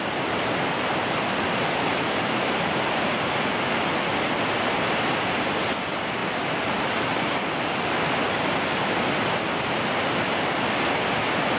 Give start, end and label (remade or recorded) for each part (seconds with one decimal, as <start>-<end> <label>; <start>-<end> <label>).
0.0-11.6 recorded